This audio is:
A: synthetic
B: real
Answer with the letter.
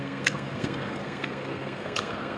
A